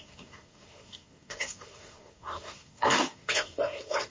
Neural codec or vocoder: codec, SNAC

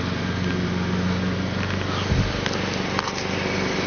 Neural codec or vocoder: none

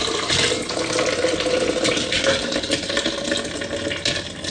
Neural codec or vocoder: none